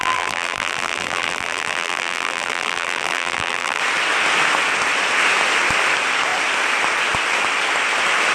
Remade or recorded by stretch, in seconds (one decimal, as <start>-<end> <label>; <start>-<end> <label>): 0.0-3.8 remade; 3.8-8.3 recorded